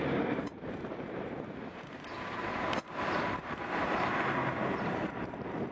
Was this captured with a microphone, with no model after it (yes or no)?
no